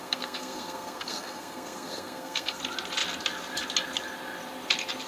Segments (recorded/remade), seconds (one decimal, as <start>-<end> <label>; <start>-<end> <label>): 0.0-2.6 remade; 2.6-5.1 recorded